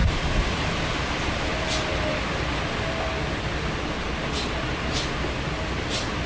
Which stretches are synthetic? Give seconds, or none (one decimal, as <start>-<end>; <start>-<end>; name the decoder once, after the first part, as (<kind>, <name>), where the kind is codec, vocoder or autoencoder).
none